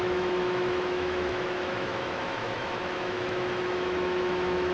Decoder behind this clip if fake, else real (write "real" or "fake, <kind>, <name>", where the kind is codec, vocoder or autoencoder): fake, autoencoder, DAC-VAE